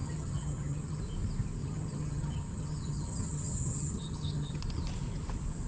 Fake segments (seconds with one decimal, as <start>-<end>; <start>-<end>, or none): 0.0-1.0; 1.6-4.6